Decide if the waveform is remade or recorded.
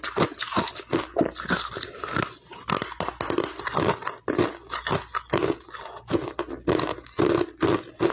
recorded